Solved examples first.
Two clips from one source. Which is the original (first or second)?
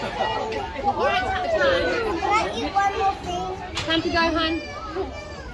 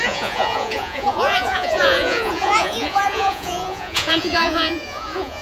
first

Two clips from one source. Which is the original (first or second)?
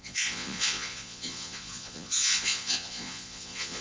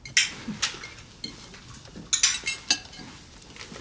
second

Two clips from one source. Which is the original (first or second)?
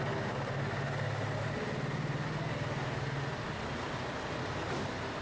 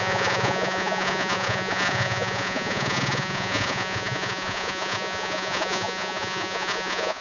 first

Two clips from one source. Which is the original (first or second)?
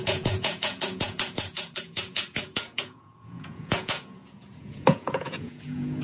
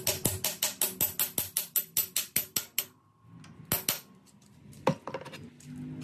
second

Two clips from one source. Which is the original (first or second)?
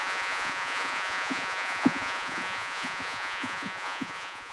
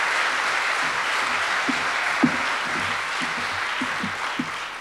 second